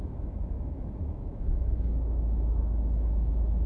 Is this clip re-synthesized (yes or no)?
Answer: yes